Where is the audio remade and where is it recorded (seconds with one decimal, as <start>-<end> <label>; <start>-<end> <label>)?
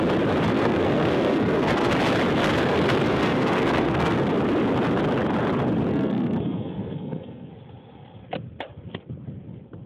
0.0-0.5 recorded; 0.5-1.9 remade; 1.9-2.4 recorded; 2.4-4.3 remade; 4.3-5.9 recorded; 5.9-7.5 remade; 7.5-9.9 recorded